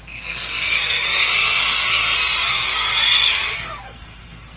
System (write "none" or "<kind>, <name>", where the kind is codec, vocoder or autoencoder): codec, SNAC